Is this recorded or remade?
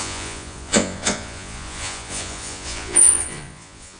remade